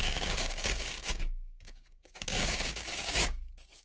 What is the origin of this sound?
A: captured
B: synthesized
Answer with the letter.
B